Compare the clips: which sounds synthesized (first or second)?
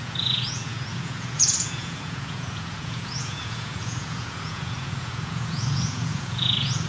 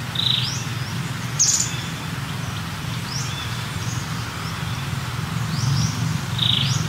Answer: first